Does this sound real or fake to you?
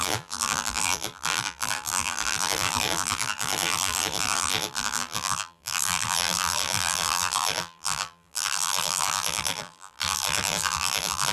fake